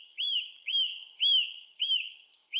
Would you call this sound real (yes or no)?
no